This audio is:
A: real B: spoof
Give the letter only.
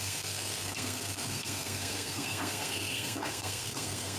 B